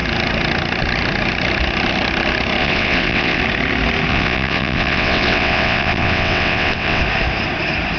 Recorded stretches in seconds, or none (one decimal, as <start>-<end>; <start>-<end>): 0.0-2.6; 3.4-4.1; 7.0-8.0